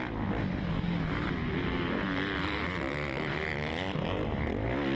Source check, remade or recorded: recorded